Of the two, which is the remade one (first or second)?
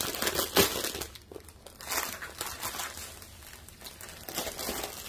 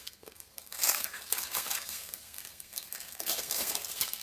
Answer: second